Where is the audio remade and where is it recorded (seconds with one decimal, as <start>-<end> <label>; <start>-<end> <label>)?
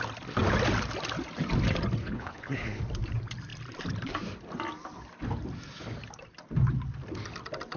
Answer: 0.0-2.0 recorded; 2.0-2.8 remade; 2.8-7.8 recorded